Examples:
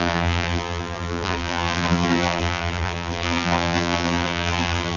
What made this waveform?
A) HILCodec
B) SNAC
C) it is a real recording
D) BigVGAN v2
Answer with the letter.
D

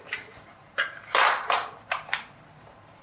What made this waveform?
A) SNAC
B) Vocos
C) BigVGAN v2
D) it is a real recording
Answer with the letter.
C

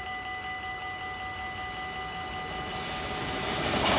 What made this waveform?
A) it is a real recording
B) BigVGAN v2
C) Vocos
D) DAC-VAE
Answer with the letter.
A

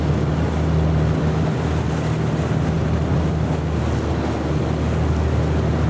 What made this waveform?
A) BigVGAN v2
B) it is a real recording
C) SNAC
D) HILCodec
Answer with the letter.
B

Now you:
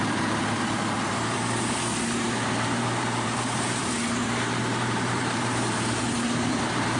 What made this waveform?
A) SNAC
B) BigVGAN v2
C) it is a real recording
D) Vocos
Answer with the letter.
B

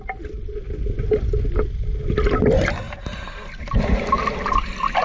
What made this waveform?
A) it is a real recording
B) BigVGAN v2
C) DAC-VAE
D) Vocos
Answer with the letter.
A